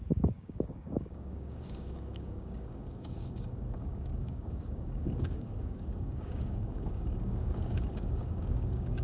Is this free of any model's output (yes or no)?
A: no